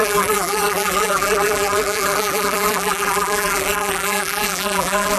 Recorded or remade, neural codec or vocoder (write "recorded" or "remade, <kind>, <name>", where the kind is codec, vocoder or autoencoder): remade, vocoder, BigVGAN v2